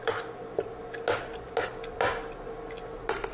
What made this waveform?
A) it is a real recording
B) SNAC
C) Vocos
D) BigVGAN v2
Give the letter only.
A